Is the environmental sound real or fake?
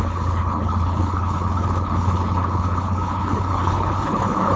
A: fake